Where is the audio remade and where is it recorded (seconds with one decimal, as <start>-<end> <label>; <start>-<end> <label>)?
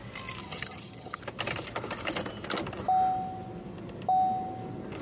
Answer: 0.0-0.4 recorded; 0.4-1.2 remade; 1.2-5.0 recorded